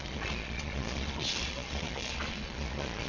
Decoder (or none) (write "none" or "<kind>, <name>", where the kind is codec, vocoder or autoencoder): vocoder, Vocos